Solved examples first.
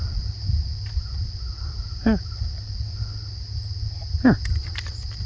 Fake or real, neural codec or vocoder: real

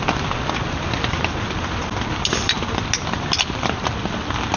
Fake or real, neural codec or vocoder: real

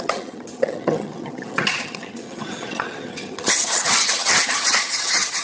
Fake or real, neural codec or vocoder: fake, vocoder, HiFi-GAN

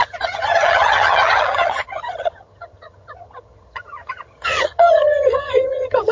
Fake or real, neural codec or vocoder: fake, vocoder, HiFi-GAN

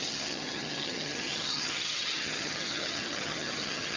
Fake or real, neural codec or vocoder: fake, vocoder, HiFi-GAN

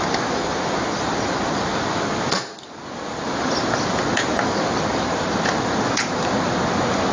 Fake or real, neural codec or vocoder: real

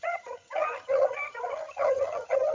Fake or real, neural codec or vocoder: fake, vocoder, HiFi-GAN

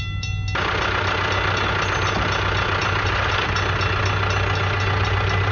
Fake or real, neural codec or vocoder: real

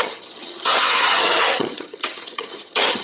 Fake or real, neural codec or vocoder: fake, vocoder, HiFi-GAN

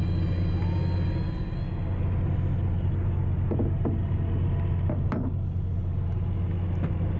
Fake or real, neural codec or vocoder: real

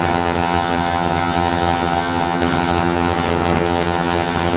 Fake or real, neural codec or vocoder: fake, vocoder, HiFi-GAN